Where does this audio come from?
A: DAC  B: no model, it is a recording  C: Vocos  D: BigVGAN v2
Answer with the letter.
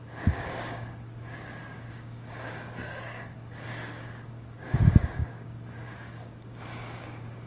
A